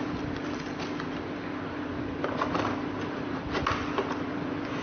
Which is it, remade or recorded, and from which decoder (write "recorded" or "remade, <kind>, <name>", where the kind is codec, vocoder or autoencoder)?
recorded